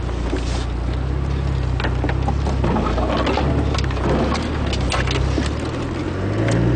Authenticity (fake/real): real